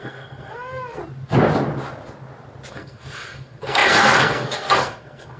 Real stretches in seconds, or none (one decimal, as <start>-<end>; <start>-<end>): 1.0-2.7